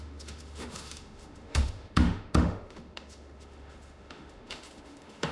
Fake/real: fake